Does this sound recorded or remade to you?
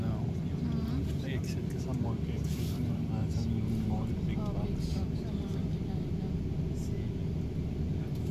recorded